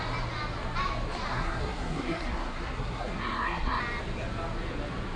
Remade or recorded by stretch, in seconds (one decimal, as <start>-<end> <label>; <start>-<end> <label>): 0.0-1.3 recorded; 1.3-3.8 remade; 3.8-5.2 recorded